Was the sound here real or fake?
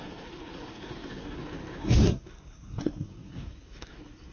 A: fake